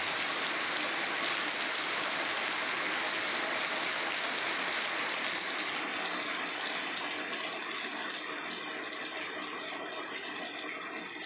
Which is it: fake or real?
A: real